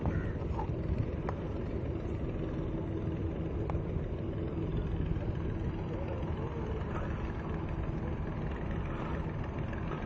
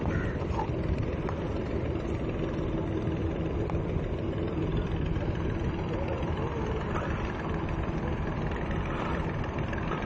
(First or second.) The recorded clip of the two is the first